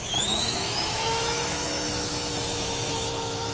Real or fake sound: fake